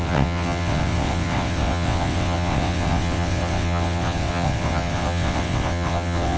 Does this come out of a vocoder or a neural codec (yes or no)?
yes